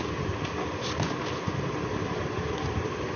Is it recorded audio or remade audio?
recorded